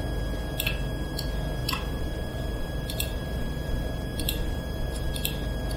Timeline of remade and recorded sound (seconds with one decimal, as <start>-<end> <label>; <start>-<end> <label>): 0.0-1.6 recorded; 1.6-5.1 remade; 5.1-5.8 recorded